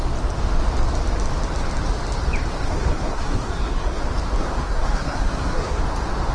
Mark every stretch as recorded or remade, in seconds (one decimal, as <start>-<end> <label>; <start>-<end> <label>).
0.0-2.5 recorded; 2.5-4.0 remade; 4.0-4.4 recorded; 4.4-5.8 remade; 5.8-6.3 recorded